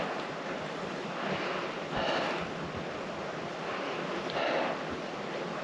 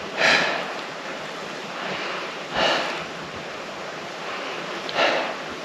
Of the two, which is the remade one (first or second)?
second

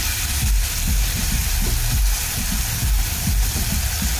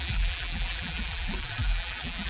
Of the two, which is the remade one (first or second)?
second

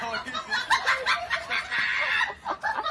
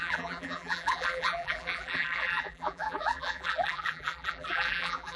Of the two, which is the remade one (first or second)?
second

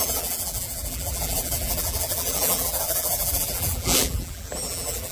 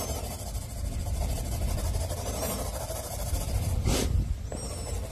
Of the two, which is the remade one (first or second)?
first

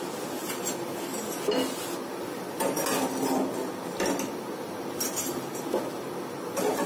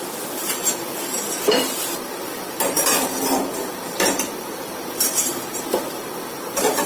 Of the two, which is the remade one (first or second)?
second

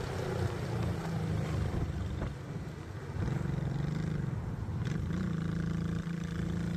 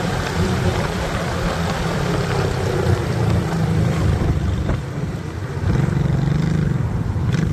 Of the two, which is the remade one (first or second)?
second